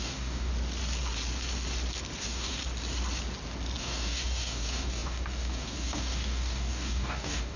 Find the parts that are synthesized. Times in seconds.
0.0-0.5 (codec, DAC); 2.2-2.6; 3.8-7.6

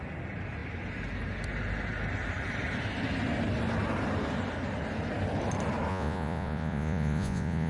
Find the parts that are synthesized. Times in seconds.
5.9-7.7 (vocoder, Vocos)

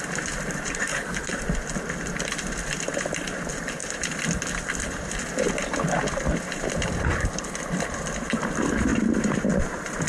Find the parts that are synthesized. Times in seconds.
0.9-1.4 (codec, HILCodec)